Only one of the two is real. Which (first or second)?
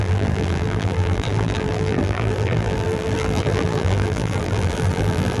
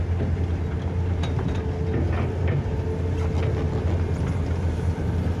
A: second